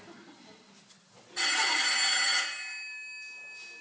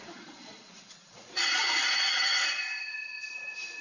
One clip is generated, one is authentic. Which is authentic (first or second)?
first